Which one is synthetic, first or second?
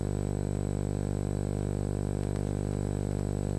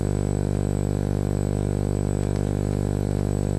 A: second